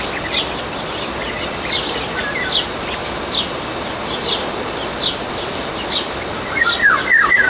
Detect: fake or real real